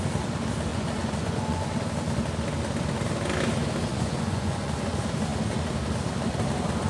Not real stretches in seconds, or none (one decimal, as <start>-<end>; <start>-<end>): 0.7-1.6; 3.9-4.7

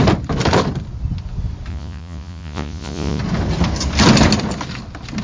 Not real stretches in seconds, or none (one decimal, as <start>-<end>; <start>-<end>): 1.7-3.2

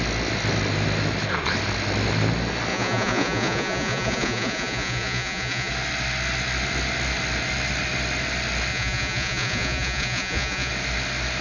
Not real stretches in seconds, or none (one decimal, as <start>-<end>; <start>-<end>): 2.7-5.7; 8.7-10.7

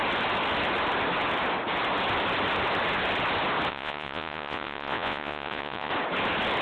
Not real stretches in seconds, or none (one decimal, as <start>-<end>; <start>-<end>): 3.7-5.9